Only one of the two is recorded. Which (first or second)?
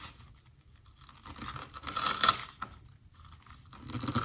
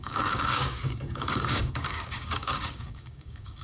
first